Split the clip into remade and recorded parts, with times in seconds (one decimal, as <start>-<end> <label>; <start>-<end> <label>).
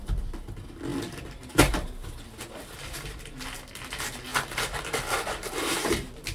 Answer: 0.0-0.9 recorded; 0.9-1.5 remade; 1.5-2.0 recorded; 2.0-3.8 remade; 3.8-4.3 recorded; 4.3-5.6 remade; 5.6-6.3 recorded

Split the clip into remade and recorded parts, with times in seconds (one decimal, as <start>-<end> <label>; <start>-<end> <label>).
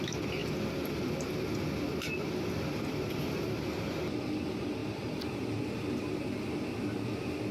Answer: 0.0-7.5 recorded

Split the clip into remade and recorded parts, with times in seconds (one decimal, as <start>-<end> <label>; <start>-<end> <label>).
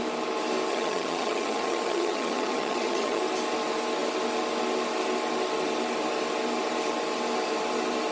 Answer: 0.0-0.7 recorded; 0.7-3.2 remade; 3.2-8.1 recorded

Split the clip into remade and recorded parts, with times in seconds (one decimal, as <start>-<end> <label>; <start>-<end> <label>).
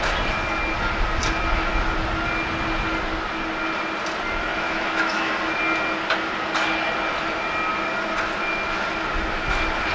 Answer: 0.0-4.5 recorded; 4.5-5.3 remade; 5.3-9.9 recorded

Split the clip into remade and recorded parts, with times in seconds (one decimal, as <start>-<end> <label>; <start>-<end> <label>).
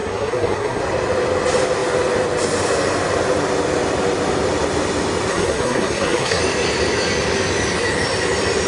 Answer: 0.0-0.8 remade; 0.8-5.3 recorded; 5.3-6.4 remade; 6.4-8.7 recorded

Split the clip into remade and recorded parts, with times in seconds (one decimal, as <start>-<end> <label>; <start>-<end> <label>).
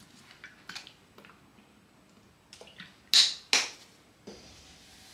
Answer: 0.0-5.1 recorded